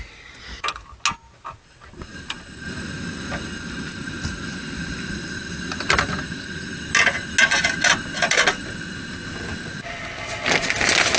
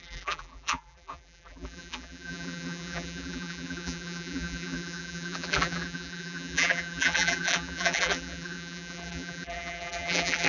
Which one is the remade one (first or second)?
second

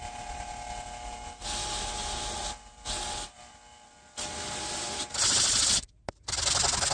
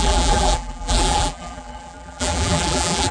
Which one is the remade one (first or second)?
second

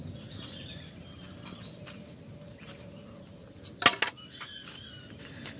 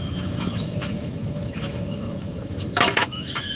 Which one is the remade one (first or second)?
second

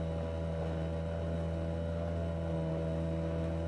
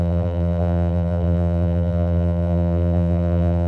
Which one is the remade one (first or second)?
second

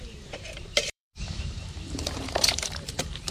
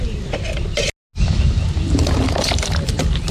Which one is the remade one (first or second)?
first